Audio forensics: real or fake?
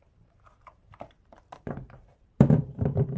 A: fake